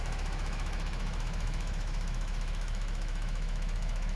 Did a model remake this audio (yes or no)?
yes